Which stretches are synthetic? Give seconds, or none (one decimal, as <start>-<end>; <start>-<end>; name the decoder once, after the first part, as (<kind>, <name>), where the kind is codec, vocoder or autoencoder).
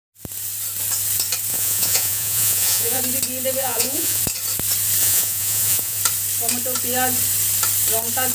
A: 1.5-3.0 (vocoder, Vocos); 3.6-4.2; 5.0-6.0